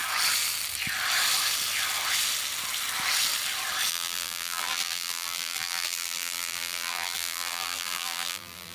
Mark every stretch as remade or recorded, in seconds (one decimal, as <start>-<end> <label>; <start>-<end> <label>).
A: 0.0-3.9 recorded; 3.9-8.7 remade